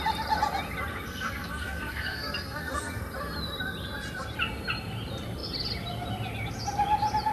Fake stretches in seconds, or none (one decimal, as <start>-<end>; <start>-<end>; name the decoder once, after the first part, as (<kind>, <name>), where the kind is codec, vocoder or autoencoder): 0.9-3.0 (codec, SNAC)